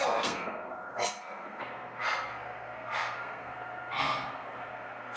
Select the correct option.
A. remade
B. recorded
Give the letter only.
A